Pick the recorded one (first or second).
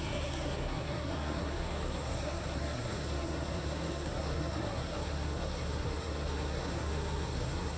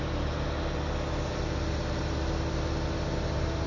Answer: second